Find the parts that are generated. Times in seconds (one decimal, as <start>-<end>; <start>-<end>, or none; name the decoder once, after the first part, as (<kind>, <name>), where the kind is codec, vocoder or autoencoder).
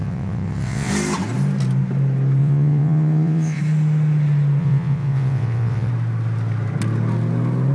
0.0-0.9 (vocoder, WaveNeXt); 2.4-3.6; 4.6-5.9